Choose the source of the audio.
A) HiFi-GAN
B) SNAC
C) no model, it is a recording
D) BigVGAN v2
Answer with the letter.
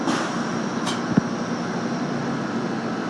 C